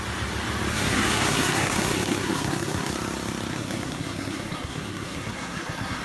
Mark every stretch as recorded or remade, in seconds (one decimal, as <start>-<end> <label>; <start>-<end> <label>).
0.0-0.7 recorded; 0.7-2.9 remade; 2.9-3.5 recorded; 3.5-6.0 remade